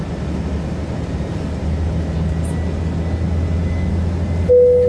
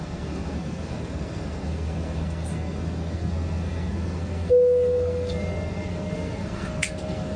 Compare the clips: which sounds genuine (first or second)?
first